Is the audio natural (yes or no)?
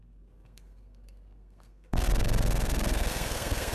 no